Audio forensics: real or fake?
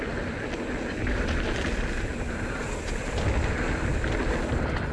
real